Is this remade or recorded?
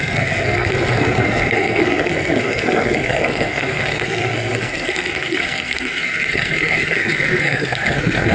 remade